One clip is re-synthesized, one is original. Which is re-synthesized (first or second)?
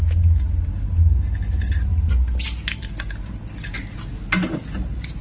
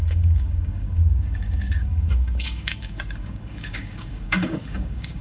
second